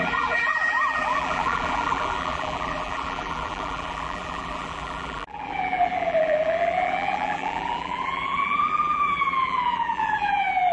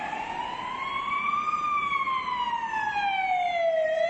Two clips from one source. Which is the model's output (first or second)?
first